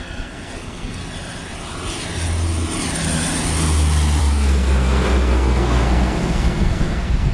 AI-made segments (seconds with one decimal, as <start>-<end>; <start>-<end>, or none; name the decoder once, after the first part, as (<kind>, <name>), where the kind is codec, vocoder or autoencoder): 0.0-1.0 (codec, SNAC); 4.2-7.3